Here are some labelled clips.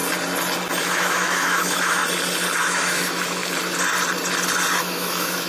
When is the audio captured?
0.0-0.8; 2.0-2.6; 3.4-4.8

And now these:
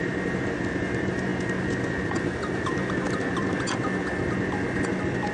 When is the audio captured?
0.0-5.3